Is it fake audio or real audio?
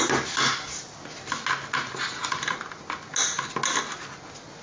real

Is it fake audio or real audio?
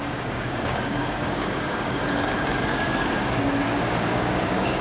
fake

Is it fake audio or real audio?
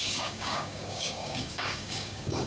fake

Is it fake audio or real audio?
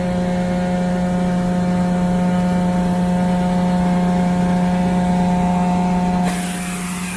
real